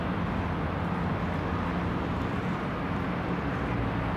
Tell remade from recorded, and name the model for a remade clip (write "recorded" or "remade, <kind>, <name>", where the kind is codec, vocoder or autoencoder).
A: recorded